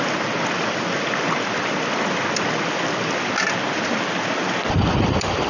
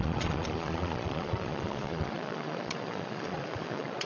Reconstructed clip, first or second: second